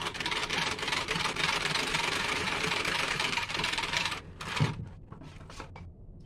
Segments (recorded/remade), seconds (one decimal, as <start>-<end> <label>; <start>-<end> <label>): 0.0-0.4 recorded; 0.4-4.2 remade; 4.2-6.3 recorded